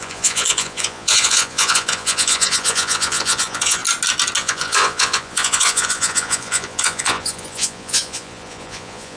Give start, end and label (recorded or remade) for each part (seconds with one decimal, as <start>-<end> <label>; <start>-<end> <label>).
0.0-3.8 remade; 3.8-4.4 recorded; 4.4-9.2 remade